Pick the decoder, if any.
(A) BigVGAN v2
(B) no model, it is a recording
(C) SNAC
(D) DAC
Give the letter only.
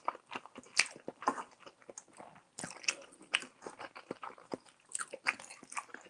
B